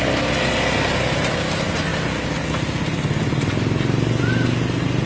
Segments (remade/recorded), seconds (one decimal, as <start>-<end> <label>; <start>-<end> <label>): 0.0-5.1 recorded